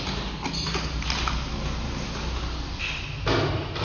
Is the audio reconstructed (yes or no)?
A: no